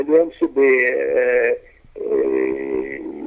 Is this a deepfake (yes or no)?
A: no